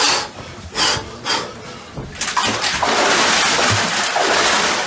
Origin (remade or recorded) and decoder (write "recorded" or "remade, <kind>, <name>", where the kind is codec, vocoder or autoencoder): recorded